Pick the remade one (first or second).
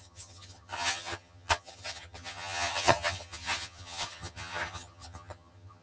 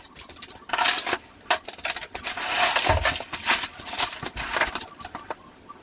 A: first